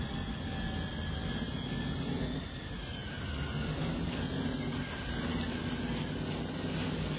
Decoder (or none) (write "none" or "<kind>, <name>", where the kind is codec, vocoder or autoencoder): none